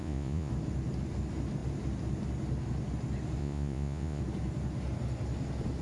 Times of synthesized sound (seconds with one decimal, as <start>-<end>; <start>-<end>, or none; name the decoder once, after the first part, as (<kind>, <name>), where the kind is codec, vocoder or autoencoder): 0.0-0.5 (vocoder, Vocos); 3.4-4.2